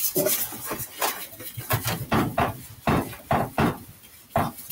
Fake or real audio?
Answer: real